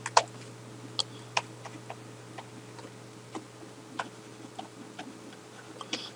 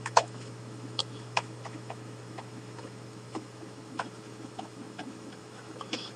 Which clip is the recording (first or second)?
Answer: first